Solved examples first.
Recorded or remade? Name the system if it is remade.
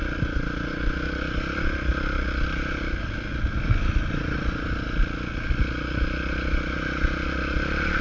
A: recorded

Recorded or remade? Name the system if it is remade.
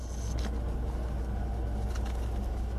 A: recorded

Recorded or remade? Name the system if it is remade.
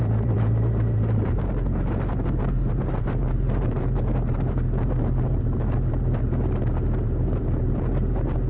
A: remade, vocoder, BigVGAN v2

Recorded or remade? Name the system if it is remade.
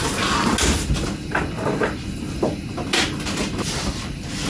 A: recorded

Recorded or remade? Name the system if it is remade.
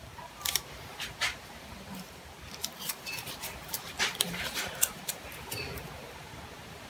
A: remade, vocoder, BigVGAN v2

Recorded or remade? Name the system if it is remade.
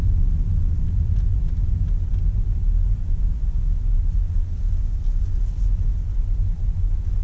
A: recorded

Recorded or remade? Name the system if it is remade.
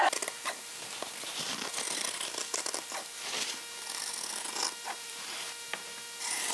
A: remade, vocoder, BigVGAN v2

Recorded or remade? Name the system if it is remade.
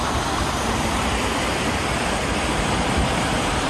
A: remade, vocoder, BigVGAN v2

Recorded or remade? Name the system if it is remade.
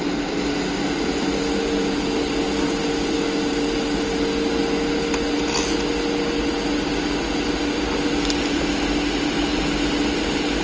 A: recorded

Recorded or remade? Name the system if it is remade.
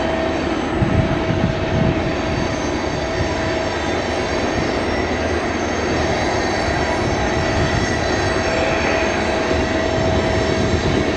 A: recorded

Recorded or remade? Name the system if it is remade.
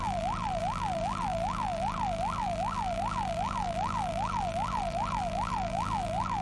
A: remade, vocoder, BigVGAN v2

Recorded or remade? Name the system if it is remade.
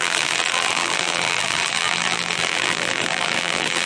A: remade, vocoder, BigVGAN v2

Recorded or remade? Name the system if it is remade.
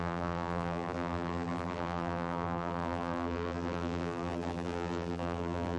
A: remade, vocoder, BigVGAN v2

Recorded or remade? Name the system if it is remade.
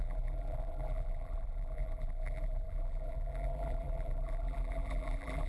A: remade, vocoder, BigVGAN v2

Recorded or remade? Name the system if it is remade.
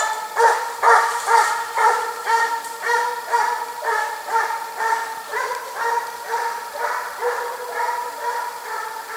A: remade, vocoder, BigVGAN v2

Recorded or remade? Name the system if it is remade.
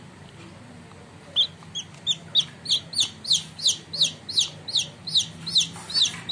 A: recorded